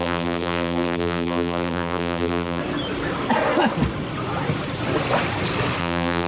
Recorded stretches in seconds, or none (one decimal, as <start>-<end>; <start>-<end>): 2.6-5.8